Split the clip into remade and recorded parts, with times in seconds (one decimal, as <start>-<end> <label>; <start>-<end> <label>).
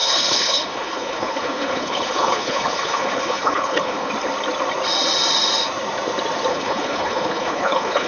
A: 0.0-4.1 remade; 4.1-6.5 recorded; 6.5-8.1 remade